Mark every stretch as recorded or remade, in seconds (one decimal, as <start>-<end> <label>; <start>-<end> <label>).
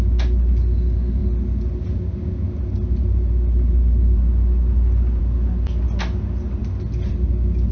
0.0-7.7 recorded